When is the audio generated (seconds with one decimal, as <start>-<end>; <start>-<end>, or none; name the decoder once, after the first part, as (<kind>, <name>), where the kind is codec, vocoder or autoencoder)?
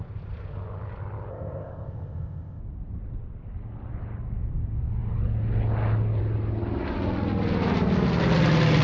1.3-2.6 (codec, ZipCodec)